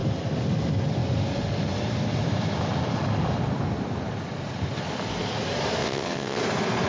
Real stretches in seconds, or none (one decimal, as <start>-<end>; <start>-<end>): 0.0-5.8; 6.4-6.9